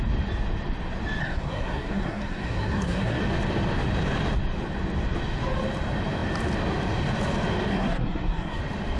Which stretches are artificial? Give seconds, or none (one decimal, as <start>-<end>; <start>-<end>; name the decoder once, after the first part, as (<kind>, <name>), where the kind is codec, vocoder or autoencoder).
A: 1.2-3.2 (codec, SNAC); 7.7-8.6